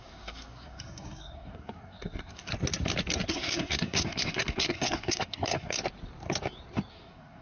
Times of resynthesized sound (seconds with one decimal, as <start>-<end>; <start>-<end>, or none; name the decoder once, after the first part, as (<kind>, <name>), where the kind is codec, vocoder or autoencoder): 0.0-2.5 (codec, SNAC); 3.3-5.8; 6.9-7.4